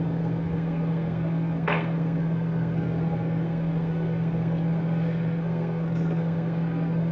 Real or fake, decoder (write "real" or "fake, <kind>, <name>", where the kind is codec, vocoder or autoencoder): fake, codec, SNAC